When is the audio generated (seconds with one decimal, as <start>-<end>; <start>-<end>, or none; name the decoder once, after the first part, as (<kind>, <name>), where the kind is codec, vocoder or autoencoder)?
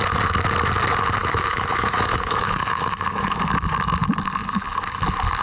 1.2-3.4 (autoencoder, DAC-VAE)